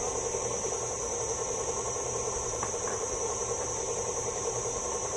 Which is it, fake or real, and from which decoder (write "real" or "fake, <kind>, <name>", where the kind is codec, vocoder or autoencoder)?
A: fake, vocoder, BigVGAN v2